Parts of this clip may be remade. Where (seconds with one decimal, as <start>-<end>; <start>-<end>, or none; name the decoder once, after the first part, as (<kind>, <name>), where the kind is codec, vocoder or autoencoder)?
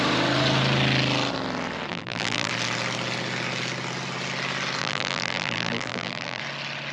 1.9-2.5 (vocoder, BigVGAN v2); 4.8-6.4